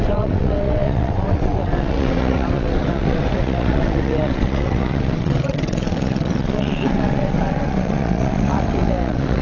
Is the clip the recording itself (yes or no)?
no